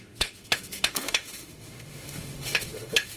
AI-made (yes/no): yes